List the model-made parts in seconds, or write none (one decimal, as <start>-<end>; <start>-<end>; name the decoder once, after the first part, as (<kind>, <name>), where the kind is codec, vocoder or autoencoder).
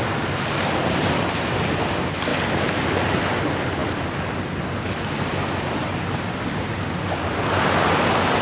none